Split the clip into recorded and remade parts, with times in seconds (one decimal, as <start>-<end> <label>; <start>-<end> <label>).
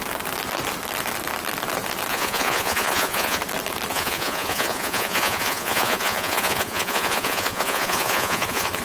0.0-2.1 recorded; 2.1-3.4 remade; 3.4-3.9 recorded; 3.9-8.8 remade